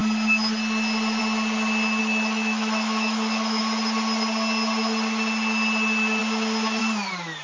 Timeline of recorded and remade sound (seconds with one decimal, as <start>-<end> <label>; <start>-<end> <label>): 0.0-2.0 recorded; 2.0-3.6 remade; 3.6-7.4 recorded